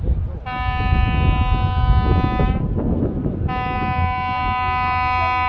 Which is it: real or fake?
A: real